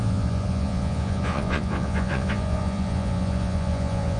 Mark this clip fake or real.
fake